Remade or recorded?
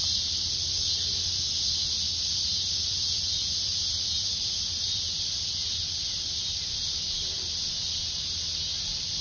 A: recorded